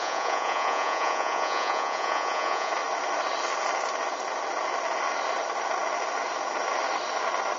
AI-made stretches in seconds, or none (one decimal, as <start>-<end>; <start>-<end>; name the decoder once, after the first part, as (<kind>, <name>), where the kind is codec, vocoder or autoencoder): 0.0-2.7 (vocoder, Vocos)